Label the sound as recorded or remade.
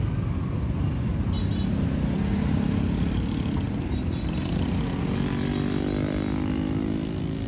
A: recorded